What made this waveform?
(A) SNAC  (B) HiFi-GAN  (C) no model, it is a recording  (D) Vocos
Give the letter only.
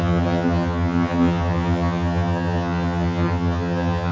B